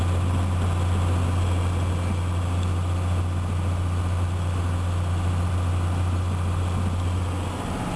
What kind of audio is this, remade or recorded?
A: recorded